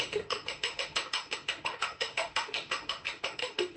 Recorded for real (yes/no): no